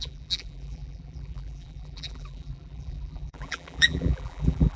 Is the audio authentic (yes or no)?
no